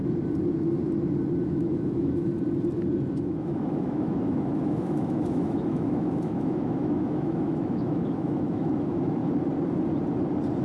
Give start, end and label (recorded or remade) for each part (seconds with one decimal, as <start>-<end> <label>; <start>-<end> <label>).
0.0-1.4 recorded; 1.4-2.3 remade; 2.3-3.2 recorded; 3.2-9.2 remade; 9.2-10.6 recorded

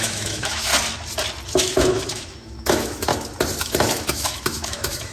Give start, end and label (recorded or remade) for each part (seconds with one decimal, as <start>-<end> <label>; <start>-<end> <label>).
0.0-0.7 remade; 0.7-1.6 recorded; 1.6-3.1 remade; 3.1-3.6 recorded; 3.6-5.1 remade

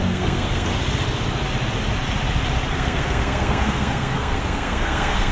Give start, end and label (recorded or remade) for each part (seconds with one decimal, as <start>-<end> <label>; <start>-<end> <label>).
0.0-0.7 remade; 0.7-2.7 recorded; 2.7-5.3 remade

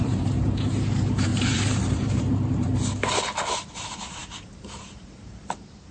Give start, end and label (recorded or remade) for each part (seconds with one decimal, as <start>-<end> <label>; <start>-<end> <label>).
0.0-2.7 remade; 2.7-3.6 recorded; 3.6-5.9 remade

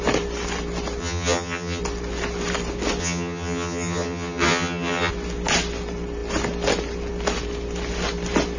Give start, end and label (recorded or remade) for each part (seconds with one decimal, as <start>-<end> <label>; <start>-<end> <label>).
0.0-1.0 recorded; 1.0-1.8 remade; 1.8-3.0 recorded; 3.0-5.1 remade; 5.1-8.6 recorded

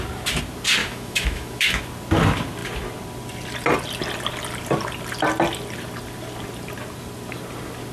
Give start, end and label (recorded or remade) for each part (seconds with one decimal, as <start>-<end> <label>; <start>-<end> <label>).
0.0-0.8 recorded; 0.8-1.8 remade; 1.8-7.9 recorded